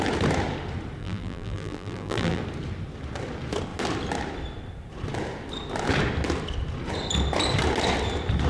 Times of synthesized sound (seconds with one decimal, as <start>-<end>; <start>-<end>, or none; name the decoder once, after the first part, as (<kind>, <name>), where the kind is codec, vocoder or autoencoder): 1.0-2.4 (vocoder, BigVGAN v2)